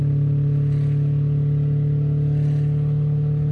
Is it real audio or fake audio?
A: real